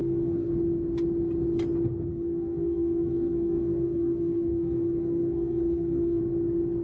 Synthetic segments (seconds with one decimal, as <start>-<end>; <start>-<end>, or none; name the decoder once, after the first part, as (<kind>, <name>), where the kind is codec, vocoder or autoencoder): 0.0-0.5 (codec, SNAC); 2.1-6.2